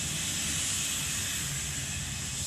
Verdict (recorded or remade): recorded